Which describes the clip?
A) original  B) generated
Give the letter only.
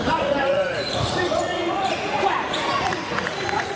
B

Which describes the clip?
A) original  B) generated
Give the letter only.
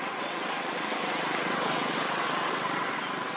B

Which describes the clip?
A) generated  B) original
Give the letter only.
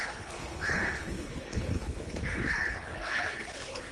A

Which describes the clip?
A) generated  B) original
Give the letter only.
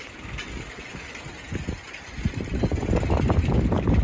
B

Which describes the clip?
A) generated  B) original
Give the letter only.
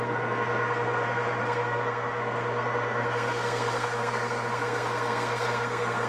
A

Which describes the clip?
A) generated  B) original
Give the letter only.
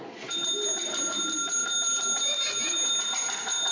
B